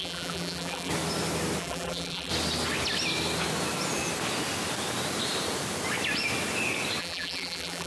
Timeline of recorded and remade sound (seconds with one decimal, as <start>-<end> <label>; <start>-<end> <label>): 0.0-0.9 remade; 0.9-1.6 recorded; 1.6-2.3 remade; 2.3-7.0 recorded; 7.0-7.9 remade

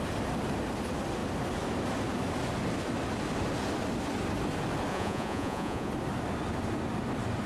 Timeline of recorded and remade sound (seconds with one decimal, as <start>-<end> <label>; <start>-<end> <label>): 0.0-4.9 recorded; 4.9-5.9 remade; 5.9-7.5 recorded

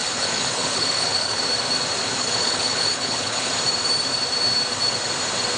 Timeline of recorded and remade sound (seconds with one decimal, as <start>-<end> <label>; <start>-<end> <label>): 0.0-1.4 remade; 1.4-2.2 recorded; 2.2-3.5 remade; 3.5-5.6 recorded

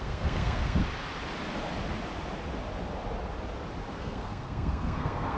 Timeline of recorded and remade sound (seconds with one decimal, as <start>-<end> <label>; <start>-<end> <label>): 0.0-0.8 remade; 0.8-4.0 recorded; 4.0-5.4 remade

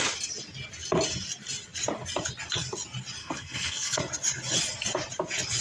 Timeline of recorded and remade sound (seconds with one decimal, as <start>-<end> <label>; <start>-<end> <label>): 0.0-3.2 recorded; 3.2-4.0 remade; 4.0-5.6 recorded

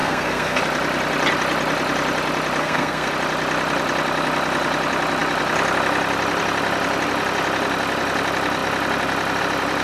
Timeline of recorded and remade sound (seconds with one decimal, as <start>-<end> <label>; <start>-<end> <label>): 0.0-0.6 remade; 0.6-2.6 recorded; 2.6-3.1 remade; 3.1-9.8 recorded

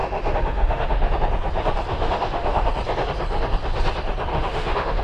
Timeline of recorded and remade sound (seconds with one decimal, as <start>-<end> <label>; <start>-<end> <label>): 0.0-1.1 remade; 1.1-1.9 recorded; 1.9-2.7 remade; 2.7-4.3 recorded; 4.3-5.0 remade

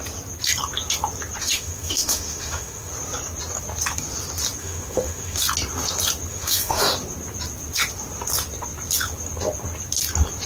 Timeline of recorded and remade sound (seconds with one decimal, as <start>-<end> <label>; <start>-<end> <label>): 0.0-1.4 recorded; 1.4-2.9 remade; 2.9-4.6 recorded; 4.6-5.4 remade; 5.4-6.3 recorded; 6.3-6.9 remade; 6.9-10.5 recorded